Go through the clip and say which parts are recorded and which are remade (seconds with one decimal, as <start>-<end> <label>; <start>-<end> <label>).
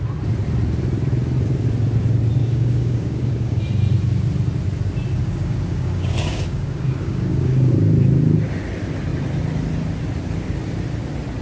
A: 0.0-2.4 recorded; 2.4-3.6 remade; 3.6-5.2 recorded; 5.2-7.7 remade; 7.7-11.4 recorded